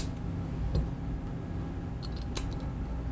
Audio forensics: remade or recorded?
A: recorded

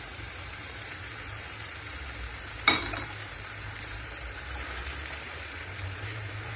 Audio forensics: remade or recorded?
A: remade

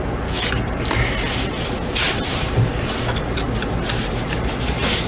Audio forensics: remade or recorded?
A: recorded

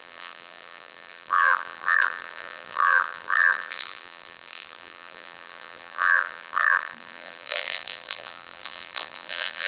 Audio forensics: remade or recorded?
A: remade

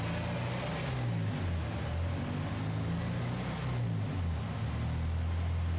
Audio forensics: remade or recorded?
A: recorded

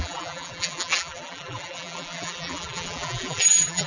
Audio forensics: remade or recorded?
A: remade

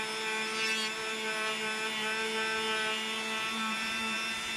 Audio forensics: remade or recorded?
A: recorded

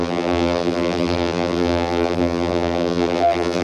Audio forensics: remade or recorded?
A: remade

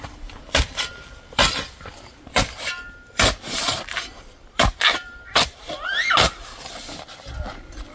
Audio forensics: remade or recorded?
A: remade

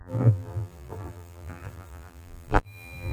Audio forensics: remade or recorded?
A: remade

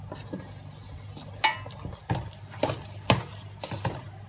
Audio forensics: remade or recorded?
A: recorded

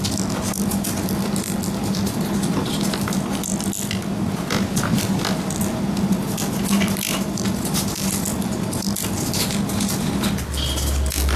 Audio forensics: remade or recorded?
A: recorded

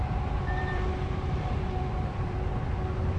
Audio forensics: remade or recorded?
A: remade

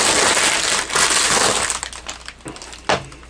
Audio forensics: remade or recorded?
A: recorded